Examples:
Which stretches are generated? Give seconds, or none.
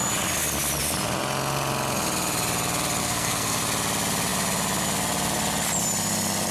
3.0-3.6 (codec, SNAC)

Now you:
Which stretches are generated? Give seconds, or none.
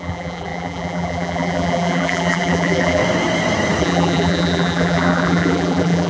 0.0-3.0 (vocoder, BigVGAN v2); 3.8-6.1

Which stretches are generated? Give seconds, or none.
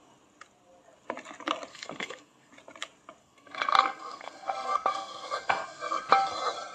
1.7-2.5 (codec, SNAC); 3.2-6.1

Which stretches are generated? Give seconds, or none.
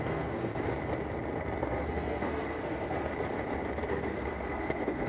0.0-0.5 (codec, SNAC); 1.6-3.1; 3.9-5.1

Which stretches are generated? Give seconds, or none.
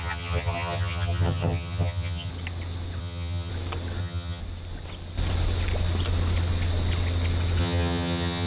0.0-2.3 (vocoder, HiFi-GAN); 3.0-3.5; 4.0-4.4; 7.6-8.5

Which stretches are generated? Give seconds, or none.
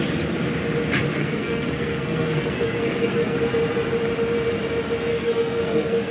1.2-3.4 (codec, SNAC); 5.1-6.1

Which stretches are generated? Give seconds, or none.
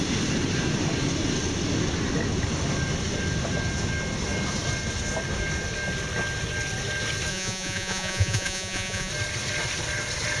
7.3-9.1 (vocoder, Vocos)